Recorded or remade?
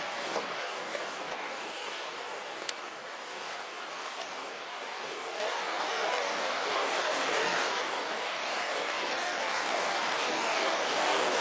remade